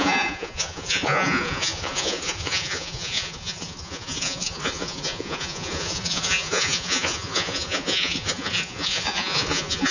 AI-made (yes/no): yes